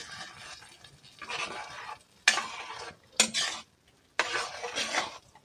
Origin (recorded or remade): recorded